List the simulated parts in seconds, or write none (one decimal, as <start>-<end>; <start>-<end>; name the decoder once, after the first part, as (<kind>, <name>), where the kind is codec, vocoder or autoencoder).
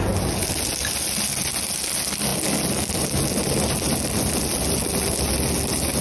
none